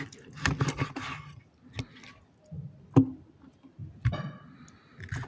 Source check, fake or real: real